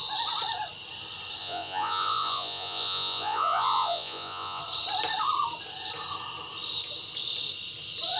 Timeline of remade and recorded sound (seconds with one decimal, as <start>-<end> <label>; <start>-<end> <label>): 0.0-1.4 recorded; 1.4-4.6 remade; 4.6-8.2 recorded

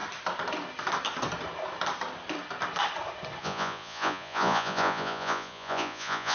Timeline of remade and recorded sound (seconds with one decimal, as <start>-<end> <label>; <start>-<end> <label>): 0.0-3.4 recorded; 3.4-6.3 remade

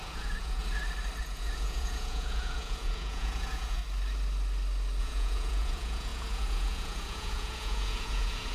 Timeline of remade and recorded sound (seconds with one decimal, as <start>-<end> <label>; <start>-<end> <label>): 0.0-0.6 remade; 0.6-1.2 recorded; 1.2-3.8 remade; 3.8-5.0 recorded; 5.0-8.5 remade

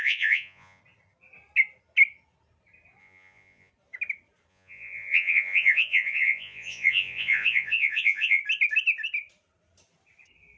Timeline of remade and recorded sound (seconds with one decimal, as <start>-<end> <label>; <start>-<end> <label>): 0.0-0.8 remade; 0.8-3.0 recorded; 3.0-3.7 remade; 3.7-4.5 recorded; 4.5-8.4 remade; 8.4-10.6 recorded

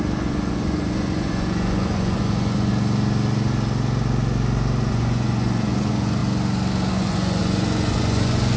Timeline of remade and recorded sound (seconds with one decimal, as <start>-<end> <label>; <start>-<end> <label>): 0.0-2.7 remade; 2.7-4.9 recorded; 4.9-6.2 remade; 6.2-6.9 recorded; 6.9-8.6 remade

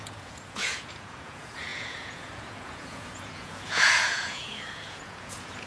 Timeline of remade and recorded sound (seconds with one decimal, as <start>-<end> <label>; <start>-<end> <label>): 0.0-5.7 remade

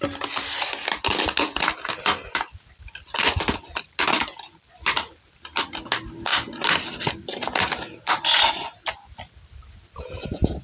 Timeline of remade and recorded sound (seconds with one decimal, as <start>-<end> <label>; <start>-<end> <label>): 0.0-10.6 recorded